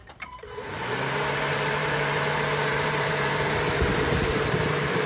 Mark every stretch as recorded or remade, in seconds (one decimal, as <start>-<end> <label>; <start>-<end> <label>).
0.0-2.2 remade; 2.2-2.7 recorded; 2.7-5.1 remade